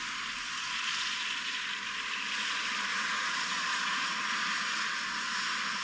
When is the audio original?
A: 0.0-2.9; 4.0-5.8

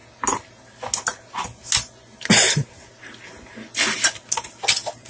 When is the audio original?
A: 0.0-5.1

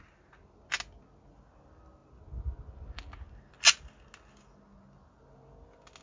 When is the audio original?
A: 0.0-6.0

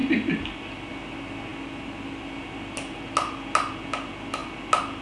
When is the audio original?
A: 0.0-5.0

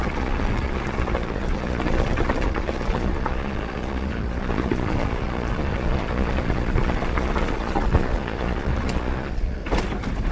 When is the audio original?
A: 9.6-10.3

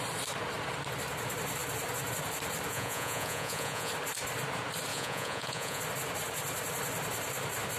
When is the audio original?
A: 0.0-2.7; 3.9-4.9; 5.8-7.8

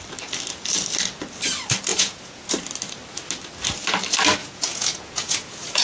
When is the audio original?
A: 0.0-1.9; 2.5-4.4